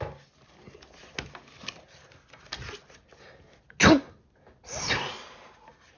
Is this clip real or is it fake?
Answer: real